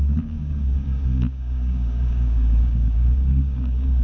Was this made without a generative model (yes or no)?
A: no